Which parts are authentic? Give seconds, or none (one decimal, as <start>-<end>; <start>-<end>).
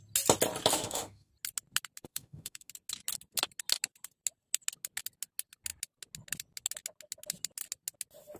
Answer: 0.0-0.7; 1.3-2.1; 2.7-8.4